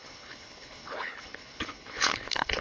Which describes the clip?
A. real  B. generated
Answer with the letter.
B